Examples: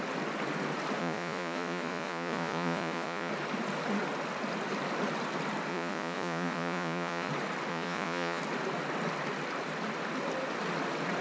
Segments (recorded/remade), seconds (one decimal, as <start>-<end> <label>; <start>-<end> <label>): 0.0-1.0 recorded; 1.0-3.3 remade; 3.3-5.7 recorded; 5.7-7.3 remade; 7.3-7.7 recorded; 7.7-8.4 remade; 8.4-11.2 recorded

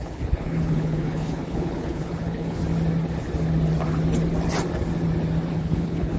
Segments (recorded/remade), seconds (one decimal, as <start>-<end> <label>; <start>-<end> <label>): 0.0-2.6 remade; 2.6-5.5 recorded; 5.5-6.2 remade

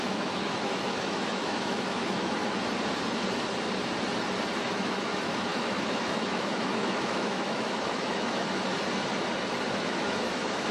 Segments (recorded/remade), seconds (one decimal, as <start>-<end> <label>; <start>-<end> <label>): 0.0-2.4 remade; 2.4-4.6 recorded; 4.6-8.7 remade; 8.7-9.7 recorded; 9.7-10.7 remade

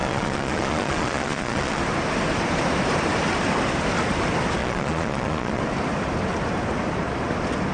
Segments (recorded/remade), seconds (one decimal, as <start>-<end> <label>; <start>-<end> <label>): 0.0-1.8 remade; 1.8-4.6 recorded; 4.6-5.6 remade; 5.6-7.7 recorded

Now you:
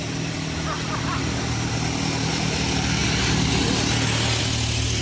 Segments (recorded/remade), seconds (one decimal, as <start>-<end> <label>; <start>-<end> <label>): 0.0-5.0 recorded

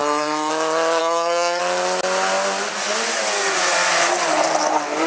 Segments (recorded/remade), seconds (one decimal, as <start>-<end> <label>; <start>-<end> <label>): 0.0-0.5 remade; 0.5-1.0 recorded; 1.0-1.6 remade; 1.6-5.1 recorded

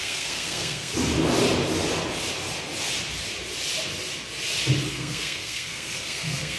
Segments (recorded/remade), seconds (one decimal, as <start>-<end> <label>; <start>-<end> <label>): 0.0-0.9 remade; 0.9-4.9 recorded; 4.9-6.6 remade